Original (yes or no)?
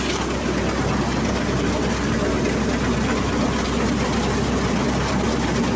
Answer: yes